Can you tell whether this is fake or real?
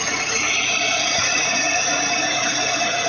fake